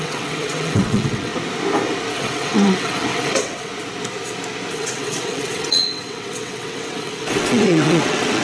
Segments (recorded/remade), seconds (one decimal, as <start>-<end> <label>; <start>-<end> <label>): 0.0-1.3 remade; 1.3-2.1 recorded; 2.1-3.7 remade; 3.7-4.7 recorded; 4.7-8.4 remade